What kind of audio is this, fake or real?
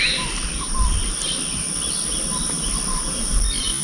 real